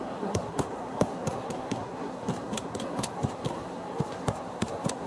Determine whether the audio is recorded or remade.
remade